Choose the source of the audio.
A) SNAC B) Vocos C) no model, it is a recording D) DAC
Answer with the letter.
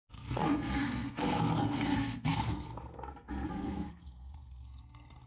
A